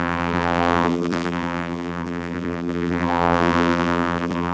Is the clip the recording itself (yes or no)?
no